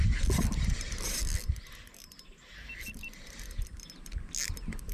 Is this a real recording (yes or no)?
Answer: yes